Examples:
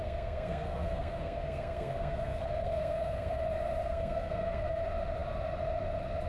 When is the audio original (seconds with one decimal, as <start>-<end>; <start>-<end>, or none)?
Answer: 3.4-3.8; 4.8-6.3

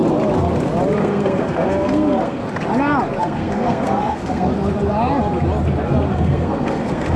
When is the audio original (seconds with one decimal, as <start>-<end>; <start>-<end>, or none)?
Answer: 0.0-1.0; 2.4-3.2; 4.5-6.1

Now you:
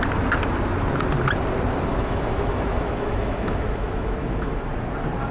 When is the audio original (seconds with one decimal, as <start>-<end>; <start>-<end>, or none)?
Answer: 0.0-1.9; 4.7-5.3